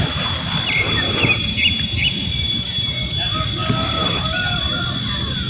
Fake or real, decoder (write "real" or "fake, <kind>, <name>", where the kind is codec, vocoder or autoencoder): real